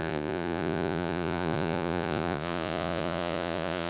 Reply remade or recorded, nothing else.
remade